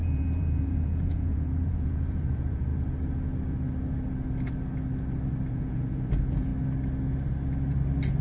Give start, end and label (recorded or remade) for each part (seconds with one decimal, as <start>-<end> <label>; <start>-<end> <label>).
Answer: 0.0-2.7 remade; 2.7-5.5 recorded; 5.5-6.5 remade; 6.5-8.2 recorded